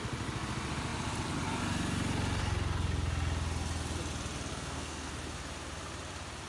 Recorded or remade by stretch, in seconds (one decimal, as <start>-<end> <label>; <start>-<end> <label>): 0.0-4.5 recorded; 4.5-5.1 remade; 5.1-6.5 recorded